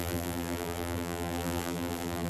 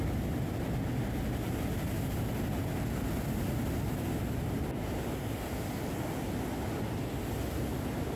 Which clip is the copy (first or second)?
first